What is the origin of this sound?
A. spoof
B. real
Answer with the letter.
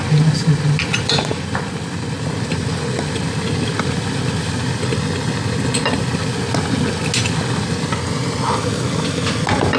B